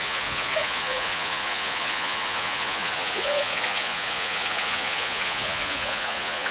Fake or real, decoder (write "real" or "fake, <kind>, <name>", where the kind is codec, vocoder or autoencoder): fake, vocoder, Vocos